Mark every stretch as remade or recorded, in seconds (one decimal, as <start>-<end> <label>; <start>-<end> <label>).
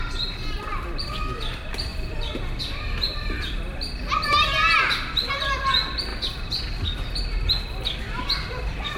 0.0-9.0 recorded